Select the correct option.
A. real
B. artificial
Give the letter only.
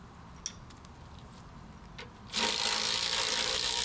A